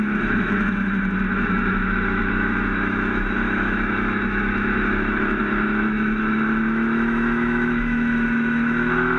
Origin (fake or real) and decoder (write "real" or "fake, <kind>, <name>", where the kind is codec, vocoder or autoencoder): fake, autoencoder, DAC-VAE